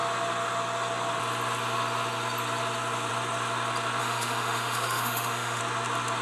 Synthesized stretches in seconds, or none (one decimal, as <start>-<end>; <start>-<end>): 4.0-5.6